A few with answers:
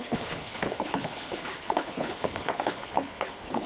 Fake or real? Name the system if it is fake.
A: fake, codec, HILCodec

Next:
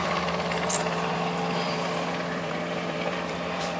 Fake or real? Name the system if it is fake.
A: fake, vocoder, BigVGAN v2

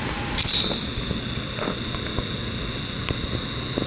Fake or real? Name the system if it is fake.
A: real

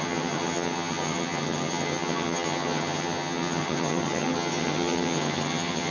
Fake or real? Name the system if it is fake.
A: fake, vocoder, HiFi-GAN